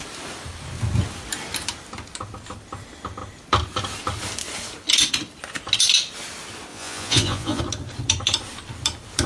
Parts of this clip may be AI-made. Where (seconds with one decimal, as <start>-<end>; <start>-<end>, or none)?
6.7-7.6